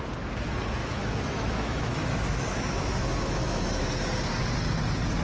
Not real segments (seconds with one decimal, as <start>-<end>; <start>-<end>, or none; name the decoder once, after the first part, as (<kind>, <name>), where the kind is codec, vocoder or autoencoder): 0.8-3.9 (autoencoder, DAC-VAE)